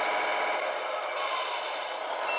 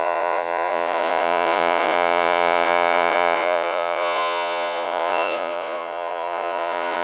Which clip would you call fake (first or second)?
second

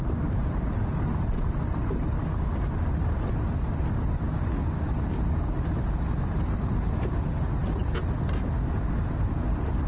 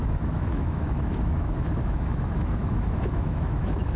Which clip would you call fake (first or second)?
second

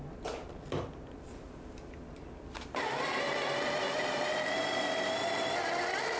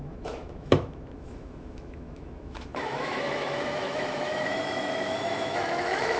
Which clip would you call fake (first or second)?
second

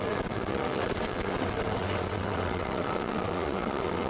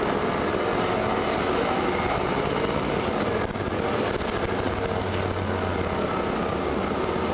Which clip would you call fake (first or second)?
first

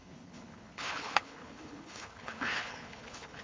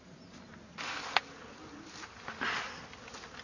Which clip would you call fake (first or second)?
first